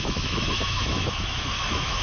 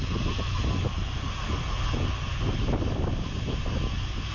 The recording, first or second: second